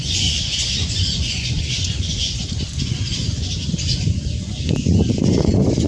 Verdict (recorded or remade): remade